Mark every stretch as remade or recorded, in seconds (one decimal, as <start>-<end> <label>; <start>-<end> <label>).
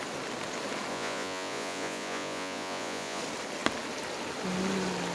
0.0-0.9 recorded; 0.9-3.2 remade; 3.2-5.1 recorded